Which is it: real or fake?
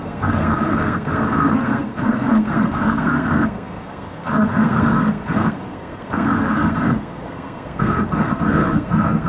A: fake